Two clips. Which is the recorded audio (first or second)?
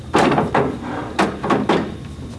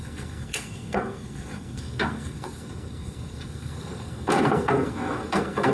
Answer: first